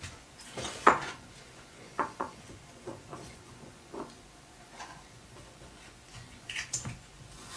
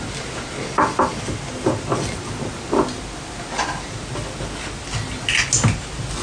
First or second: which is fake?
first